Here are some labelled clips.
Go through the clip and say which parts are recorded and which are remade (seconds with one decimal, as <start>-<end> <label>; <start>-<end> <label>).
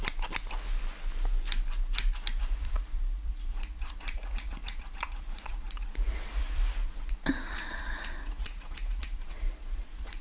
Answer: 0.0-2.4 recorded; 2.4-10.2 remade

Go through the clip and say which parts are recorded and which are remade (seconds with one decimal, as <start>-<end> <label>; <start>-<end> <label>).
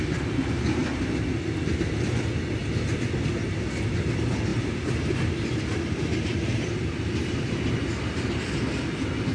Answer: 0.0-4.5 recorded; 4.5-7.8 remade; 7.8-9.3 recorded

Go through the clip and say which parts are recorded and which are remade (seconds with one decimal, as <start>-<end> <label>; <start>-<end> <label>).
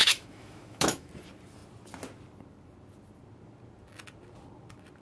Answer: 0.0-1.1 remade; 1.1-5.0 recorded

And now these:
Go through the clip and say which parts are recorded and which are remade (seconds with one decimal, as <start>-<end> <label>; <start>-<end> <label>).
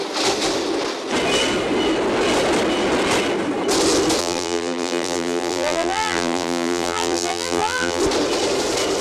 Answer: 0.0-4.2 recorded; 4.2-8.0 remade; 8.0-9.0 recorded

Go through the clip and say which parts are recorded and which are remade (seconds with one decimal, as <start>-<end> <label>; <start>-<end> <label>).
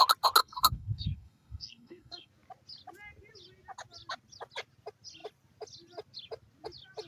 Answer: 0.0-0.4 recorded; 0.4-2.3 remade; 2.3-7.1 recorded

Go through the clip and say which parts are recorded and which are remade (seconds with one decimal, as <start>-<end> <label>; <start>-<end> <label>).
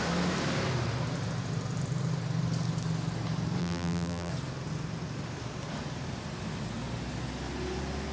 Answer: 0.0-3.6 recorded; 3.6-4.3 remade; 4.3-8.1 recorded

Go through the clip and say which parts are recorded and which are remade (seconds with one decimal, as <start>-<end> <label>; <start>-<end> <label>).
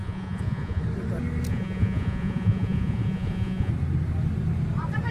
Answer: 0.0-0.8 remade; 0.8-1.5 recorded; 1.5-3.7 remade; 3.7-5.1 recorded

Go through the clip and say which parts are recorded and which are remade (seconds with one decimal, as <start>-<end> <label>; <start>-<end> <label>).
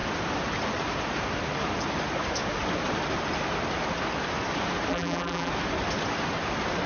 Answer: 0.0-4.9 recorded; 4.9-5.5 remade; 5.5-6.9 recorded